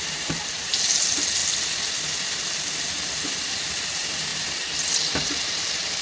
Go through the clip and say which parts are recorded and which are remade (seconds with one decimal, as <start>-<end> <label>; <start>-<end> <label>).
0.0-1.4 remade; 1.4-2.8 recorded; 2.8-6.0 remade